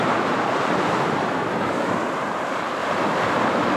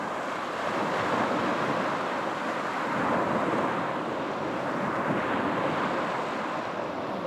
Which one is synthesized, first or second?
first